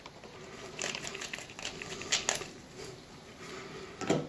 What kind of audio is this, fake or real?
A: real